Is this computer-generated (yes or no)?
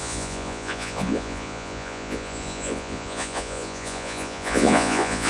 yes